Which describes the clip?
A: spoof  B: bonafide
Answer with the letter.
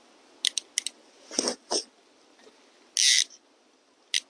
B